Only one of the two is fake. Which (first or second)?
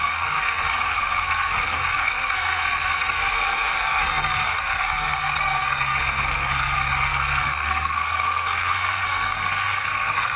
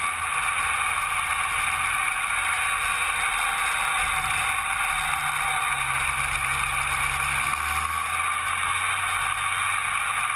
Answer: first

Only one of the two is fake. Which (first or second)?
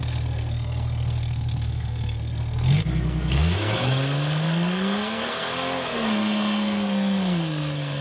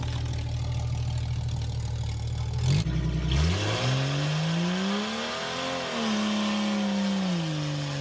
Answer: first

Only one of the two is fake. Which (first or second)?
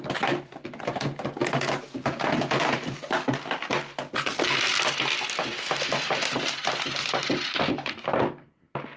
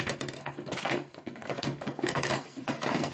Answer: second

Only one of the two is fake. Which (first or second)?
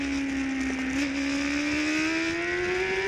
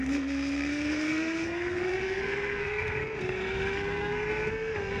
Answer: second